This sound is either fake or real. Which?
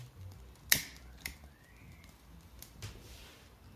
real